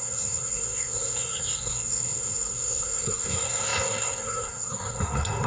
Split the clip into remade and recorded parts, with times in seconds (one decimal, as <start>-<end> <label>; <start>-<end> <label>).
0.0-5.5 remade